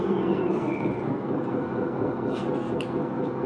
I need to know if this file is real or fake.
fake